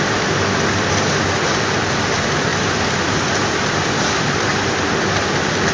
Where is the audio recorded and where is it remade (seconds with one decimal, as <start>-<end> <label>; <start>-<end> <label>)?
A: 0.0-5.7 recorded